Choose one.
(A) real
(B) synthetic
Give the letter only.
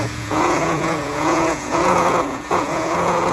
B